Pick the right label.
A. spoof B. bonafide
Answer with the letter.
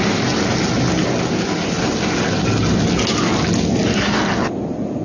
B